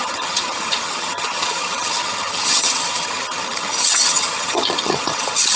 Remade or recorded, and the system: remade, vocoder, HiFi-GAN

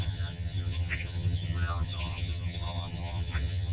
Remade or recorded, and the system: remade, vocoder, HiFi-GAN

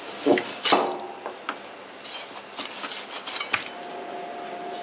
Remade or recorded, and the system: recorded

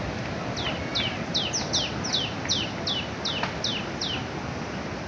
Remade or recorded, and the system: recorded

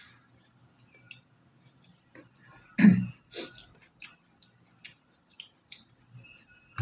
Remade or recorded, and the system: recorded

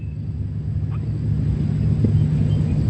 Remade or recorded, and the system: recorded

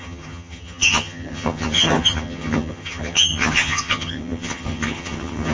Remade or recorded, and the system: remade, vocoder, HiFi-GAN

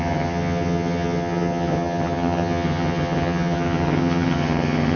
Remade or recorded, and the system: remade, vocoder, HiFi-GAN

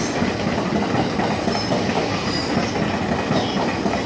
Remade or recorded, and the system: recorded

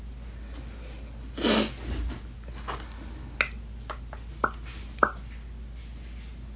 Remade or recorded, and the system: recorded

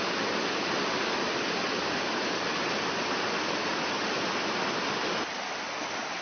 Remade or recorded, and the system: recorded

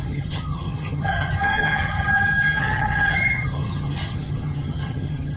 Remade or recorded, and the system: remade, vocoder, HiFi-GAN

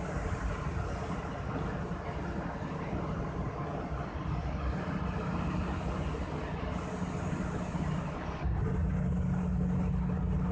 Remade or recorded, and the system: recorded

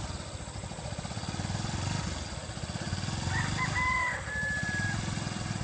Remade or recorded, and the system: recorded